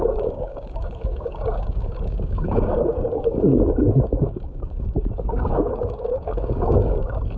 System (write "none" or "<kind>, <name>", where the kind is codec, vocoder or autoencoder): codec, DAC